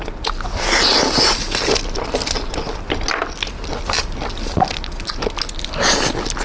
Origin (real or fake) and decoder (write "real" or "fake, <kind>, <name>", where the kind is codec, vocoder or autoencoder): real